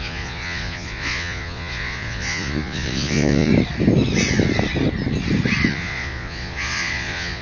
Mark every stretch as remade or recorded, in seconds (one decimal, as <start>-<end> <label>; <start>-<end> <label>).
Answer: 0.0-3.5 remade; 3.5-5.7 recorded; 5.7-7.4 remade